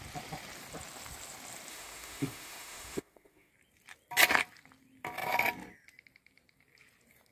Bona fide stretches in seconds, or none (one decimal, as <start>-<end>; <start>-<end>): 0.0-1.7; 3.5-7.3